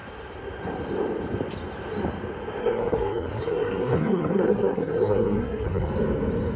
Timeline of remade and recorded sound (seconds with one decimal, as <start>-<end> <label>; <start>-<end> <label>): 0.0-2.6 recorded; 2.6-5.9 remade; 5.9-6.6 recorded

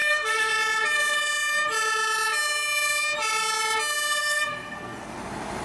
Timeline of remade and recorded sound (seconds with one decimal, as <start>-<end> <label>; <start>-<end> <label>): 0.0-0.5 remade; 0.5-4.2 recorded; 4.2-5.0 remade; 5.0-5.6 recorded

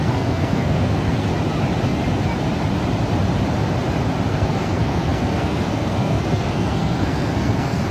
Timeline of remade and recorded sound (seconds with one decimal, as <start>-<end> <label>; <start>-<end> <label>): 0.0-1.3 remade; 1.3-4.3 recorded; 4.3-7.9 remade